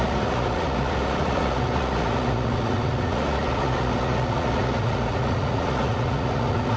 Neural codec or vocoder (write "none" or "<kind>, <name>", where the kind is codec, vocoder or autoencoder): vocoder, Vocos